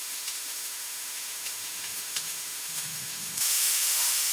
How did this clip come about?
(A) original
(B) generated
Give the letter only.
B